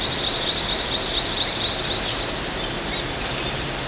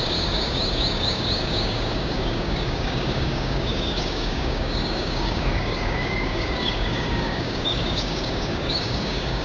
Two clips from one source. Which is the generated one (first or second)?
second